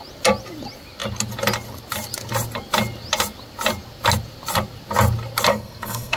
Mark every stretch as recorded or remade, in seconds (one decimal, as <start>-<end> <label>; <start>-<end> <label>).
0.0-5.5 recorded; 5.5-6.2 remade